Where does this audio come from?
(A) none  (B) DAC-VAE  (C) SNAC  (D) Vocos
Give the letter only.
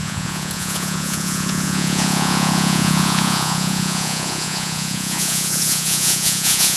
D